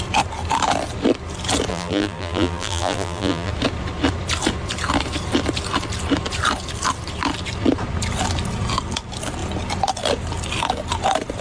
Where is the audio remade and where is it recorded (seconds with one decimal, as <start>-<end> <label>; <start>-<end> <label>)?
0.0-1.7 recorded; 1.7-3.5 remade; 3.5-11.4 recorded